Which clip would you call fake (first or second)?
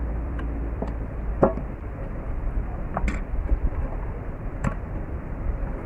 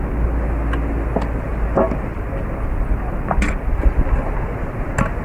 first